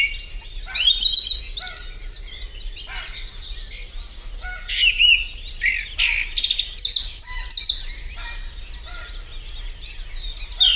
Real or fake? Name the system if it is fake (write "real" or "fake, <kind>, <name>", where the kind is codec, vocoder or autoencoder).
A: real